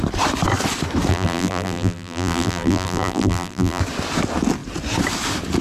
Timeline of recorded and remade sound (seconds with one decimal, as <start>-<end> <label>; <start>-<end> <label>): 0.0-1.1 recorded; 1.1-3.8 remade; 3.8-5.6 recorded

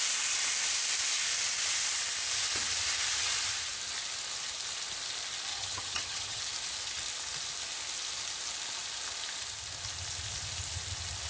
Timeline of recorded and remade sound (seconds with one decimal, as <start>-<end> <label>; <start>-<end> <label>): 0.0-5.5 recorded; 5.5-6.4 remade; 6.4-11.3 recorded